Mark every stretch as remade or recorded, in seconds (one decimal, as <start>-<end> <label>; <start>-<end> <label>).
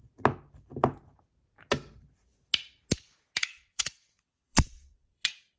0.0-3.5 recorded; 3.5-5.6 remade